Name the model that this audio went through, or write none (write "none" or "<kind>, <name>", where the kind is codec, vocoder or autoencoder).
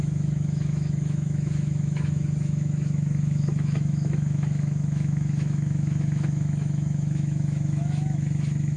autoencoder, DAC-VAE